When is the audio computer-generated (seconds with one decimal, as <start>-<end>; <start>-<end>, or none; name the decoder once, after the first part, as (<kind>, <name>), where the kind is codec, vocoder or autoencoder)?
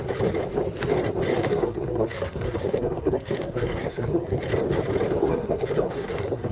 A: 1.3-4.4 (codec, SNAC); 5.2-6.5